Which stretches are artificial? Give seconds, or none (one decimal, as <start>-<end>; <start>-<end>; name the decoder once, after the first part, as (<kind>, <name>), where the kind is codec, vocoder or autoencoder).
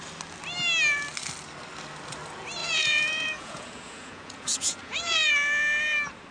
2.6-5.3 (vocoder, Vocos)